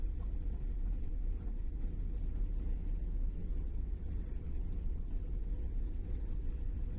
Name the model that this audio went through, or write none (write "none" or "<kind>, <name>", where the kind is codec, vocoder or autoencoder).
vocoder, WaveNeXt